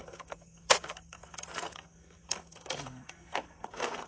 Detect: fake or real fake